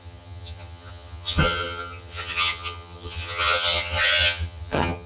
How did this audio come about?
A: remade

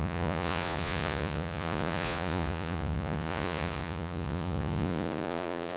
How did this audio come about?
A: remade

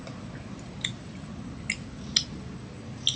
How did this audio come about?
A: recorded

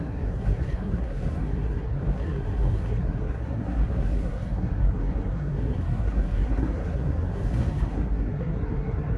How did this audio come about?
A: remade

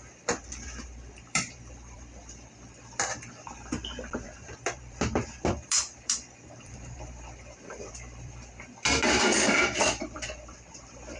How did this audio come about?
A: remade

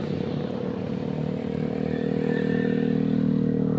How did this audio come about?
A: recorded